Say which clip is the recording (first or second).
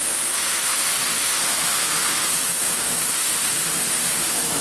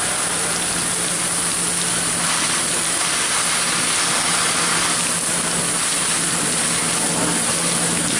second